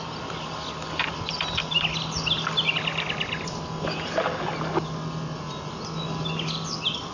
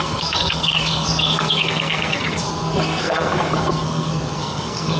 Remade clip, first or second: second